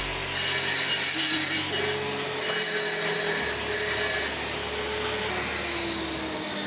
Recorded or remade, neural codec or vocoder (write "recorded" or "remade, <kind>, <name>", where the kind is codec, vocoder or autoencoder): recorded